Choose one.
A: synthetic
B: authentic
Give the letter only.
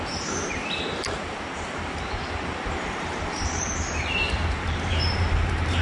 A